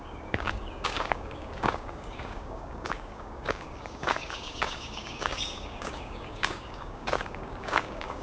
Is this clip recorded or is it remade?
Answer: remade